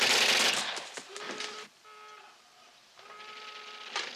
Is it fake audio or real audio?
real